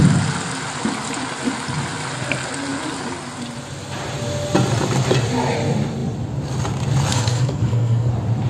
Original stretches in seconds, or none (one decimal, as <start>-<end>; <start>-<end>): 0.0-7.1; 8.1-8.5